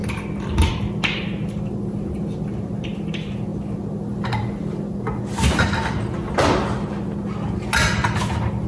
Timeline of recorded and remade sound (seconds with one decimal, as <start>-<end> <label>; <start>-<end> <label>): 0.0-8.7 recorded